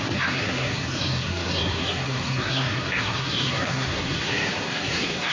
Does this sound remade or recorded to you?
remade